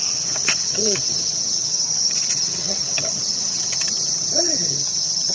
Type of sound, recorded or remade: remade